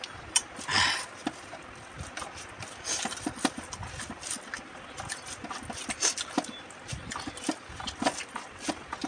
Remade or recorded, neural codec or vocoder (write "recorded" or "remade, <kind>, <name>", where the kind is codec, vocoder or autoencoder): recorded